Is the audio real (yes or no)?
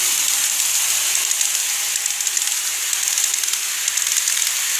yes